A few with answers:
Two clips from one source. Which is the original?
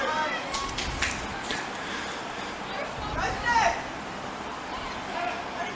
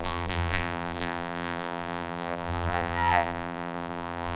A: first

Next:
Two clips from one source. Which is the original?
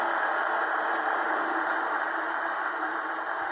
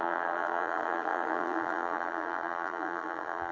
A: first